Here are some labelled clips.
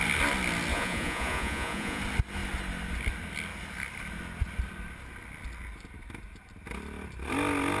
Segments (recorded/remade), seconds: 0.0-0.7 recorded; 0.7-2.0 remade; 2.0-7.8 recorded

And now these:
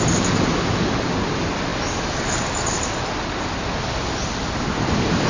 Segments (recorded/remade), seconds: 0.0-5.3 recorded